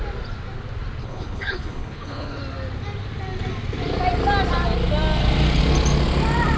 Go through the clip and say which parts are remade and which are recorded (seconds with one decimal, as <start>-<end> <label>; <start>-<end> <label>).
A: 0.0-1.0 recorded; 1.0-2.4 remade; 2.4-6.6 recorded